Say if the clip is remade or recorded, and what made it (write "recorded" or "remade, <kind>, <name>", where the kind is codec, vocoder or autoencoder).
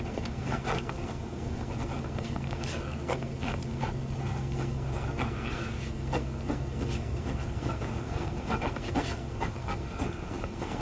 remade, codec, SNAC